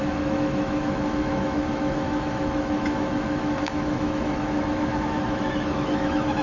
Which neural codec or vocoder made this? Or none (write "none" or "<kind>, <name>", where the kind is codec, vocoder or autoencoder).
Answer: autoencoder, DAC-VAE